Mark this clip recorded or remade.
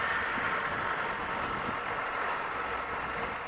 recorded